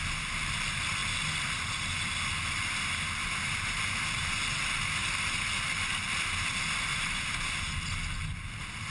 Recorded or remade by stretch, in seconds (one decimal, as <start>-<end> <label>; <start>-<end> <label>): 0.0-3.2 recorded; 3.2-4.3 remade; 4.3-5.0 recorded; 5.0-5.9 remade; 5.9-6.9 recorded; 6.9-7.5 remade; 7.5-8.9 recorded